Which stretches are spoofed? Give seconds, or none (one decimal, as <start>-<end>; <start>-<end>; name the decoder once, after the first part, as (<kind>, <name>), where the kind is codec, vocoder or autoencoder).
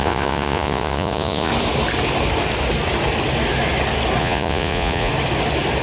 0.0-1.5 (vocoder, Vocos); 4.2-5.1